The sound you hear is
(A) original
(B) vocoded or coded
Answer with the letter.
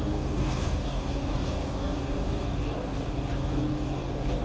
B